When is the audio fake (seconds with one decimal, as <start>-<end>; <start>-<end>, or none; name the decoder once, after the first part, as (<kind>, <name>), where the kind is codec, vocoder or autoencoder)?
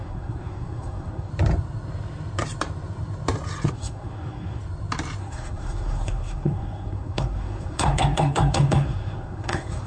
0.0-1.3 (codec, SNAC); 3.7-4.6; 5.2-9.9